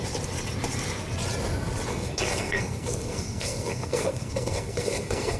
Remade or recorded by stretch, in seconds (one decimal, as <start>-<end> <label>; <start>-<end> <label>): 0.0-1.9 recorded; 1.9-5.4 remade